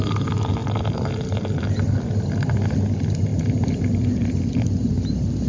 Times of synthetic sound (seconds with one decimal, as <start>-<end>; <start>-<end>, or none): none